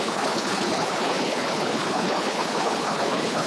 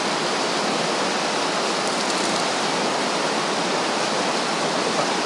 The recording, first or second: second